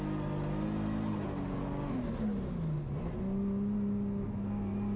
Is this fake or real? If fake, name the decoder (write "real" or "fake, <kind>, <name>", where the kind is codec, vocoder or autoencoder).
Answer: real